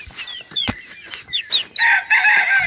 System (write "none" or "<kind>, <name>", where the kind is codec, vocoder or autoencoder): none